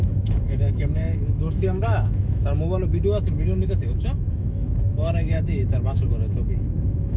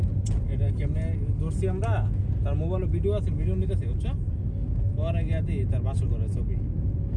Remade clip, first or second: first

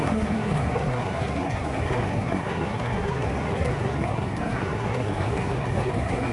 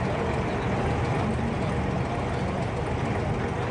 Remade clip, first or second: first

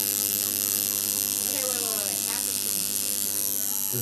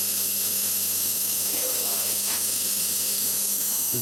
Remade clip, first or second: second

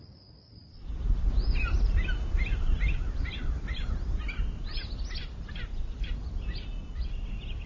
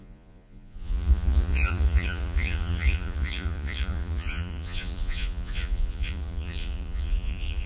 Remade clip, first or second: second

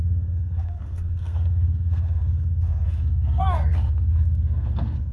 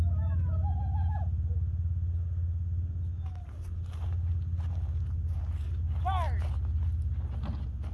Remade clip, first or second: first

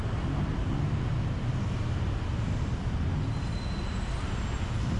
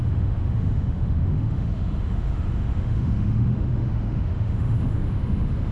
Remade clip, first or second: second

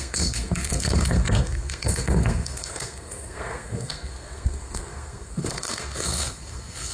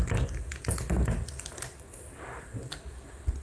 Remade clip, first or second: first